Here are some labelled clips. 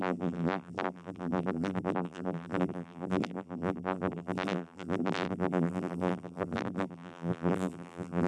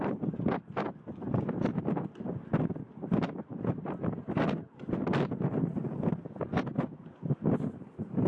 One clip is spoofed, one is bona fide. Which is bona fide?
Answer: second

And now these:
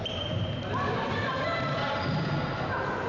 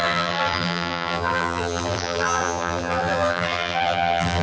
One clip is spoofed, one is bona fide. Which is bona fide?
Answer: first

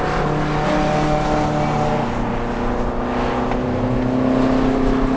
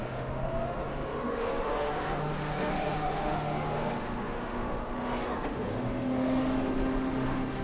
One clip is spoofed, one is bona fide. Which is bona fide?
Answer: first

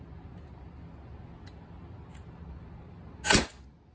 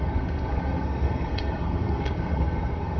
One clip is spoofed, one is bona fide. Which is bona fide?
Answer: first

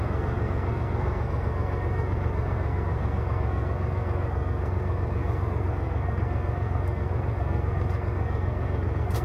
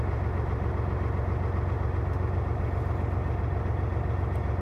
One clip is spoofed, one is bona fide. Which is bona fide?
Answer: second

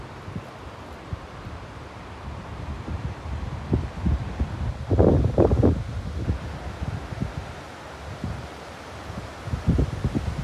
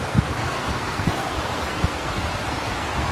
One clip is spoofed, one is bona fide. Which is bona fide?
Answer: first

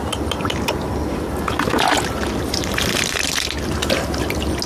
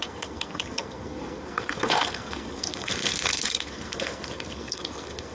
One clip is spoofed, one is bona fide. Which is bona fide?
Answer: first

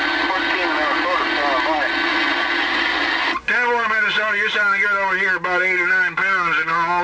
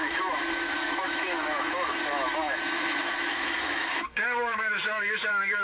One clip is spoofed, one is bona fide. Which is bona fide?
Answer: first